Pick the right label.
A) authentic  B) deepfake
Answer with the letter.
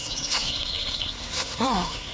B